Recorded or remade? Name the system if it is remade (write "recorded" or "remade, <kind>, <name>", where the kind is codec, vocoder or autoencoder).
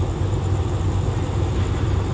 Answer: recorded